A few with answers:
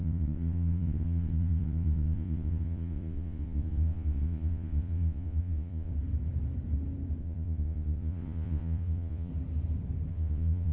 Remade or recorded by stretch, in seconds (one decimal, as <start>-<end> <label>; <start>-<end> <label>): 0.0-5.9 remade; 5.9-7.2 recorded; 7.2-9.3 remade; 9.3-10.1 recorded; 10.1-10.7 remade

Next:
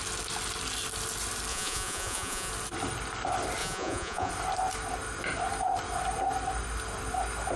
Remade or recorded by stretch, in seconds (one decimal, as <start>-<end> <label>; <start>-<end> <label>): 0.0-1.5 recorded; 1.5-2.5 remade; 2.5-3.6 recorded; 3.6-4.3 remade; 4.3-7.6 recorded

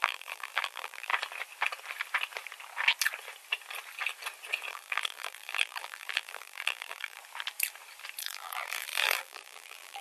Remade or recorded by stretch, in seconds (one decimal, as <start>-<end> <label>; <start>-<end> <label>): 0.0-1.1 remade; 1.1-4.7 recorded; 4.7-7.2 remade; 7.2-8.2 recorded; 8.2-10.0 remade

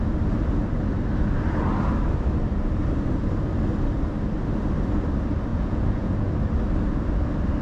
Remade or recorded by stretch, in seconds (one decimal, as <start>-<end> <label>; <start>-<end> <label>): 0.0-5.5 recorded; 5.5-6.3 remade; 6.3-7.6 recorded